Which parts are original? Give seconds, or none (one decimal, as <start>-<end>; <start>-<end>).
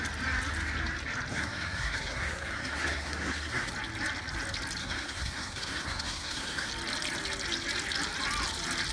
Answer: 0.0-1.3; 3.7-4.8; 6.7-8.9